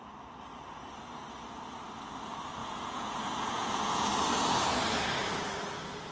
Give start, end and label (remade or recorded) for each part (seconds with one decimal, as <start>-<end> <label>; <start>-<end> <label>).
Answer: 0.0-2.6 recorded; 2.6-4.1 remade; 4.1-6.1 recorded